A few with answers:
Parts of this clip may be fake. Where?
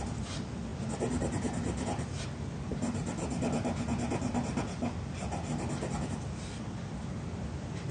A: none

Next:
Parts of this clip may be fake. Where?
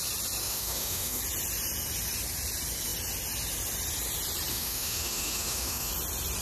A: 0.4-1.2; 4.5-5.9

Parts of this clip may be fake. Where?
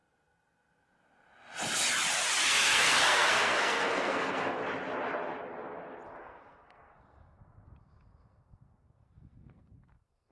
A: 2.4-4.6; 6.2-10.3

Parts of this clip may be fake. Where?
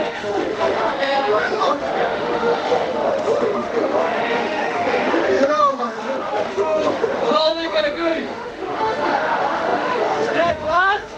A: 0.0-11.2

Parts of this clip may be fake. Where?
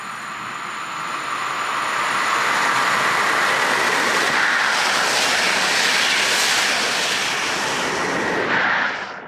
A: none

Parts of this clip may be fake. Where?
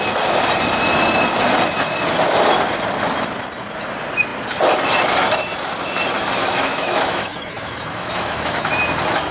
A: 6.4-8.7